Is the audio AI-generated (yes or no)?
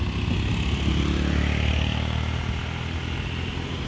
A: no